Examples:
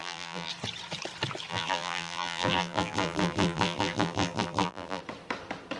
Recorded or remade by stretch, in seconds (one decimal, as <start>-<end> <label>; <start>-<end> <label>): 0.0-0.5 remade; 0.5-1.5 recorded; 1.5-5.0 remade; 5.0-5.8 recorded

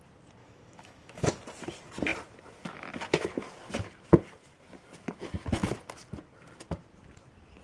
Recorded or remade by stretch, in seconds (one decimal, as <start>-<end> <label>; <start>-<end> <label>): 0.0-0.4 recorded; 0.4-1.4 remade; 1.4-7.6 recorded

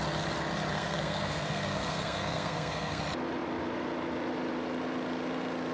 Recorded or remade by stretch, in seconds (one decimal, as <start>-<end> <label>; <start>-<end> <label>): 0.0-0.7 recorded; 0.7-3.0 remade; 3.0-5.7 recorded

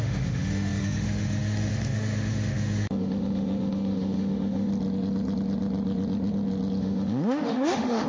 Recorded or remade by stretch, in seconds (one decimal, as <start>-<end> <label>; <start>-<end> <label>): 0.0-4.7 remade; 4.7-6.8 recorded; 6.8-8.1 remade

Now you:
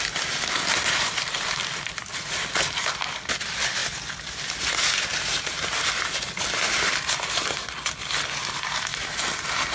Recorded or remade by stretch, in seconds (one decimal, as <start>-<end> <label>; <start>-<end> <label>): 0.0-5.1 recorded; 5.1-5.9 remade; 5.9-9.7 recorded